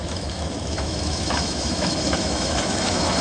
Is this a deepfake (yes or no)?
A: yes